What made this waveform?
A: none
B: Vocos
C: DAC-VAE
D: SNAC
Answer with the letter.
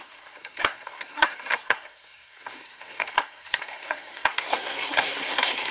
D